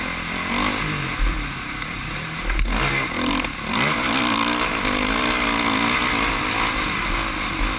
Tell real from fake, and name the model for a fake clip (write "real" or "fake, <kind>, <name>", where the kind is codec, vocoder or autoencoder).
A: real